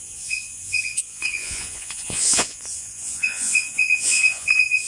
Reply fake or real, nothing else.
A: fake